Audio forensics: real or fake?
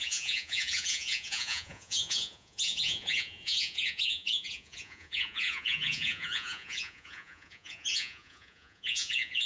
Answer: fake